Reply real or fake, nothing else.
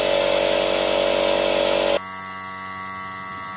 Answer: real